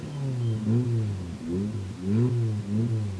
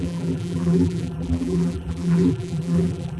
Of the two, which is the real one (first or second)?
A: first